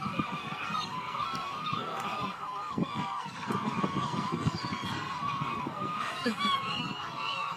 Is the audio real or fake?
fake